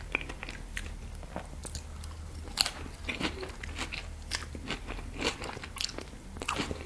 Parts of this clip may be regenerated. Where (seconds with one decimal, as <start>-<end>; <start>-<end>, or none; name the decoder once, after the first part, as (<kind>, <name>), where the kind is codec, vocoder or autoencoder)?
none